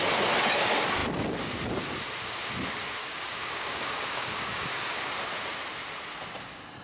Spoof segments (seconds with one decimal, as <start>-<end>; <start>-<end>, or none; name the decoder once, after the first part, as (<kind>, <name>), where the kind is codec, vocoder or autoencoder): 3.0-5.1 (codec, DAC)